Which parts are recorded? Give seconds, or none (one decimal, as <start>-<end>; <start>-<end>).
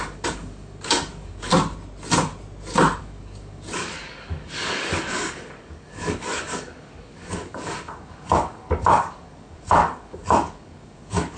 1.5-3.0